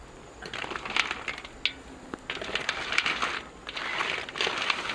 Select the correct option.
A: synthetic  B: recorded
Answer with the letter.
B